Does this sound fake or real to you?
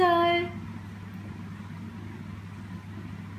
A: real